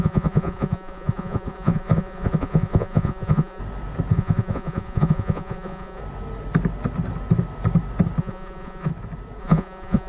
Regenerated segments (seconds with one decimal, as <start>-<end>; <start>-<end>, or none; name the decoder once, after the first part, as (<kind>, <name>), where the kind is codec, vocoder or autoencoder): 0.0-3.6 (vocoder, Vocos); 4.1-6.0; 8.2-8.9; 9.4-10.1